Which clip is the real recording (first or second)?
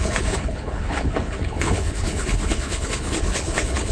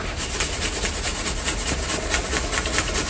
second